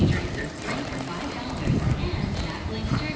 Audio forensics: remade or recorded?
recorded